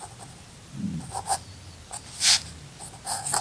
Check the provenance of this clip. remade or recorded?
recorded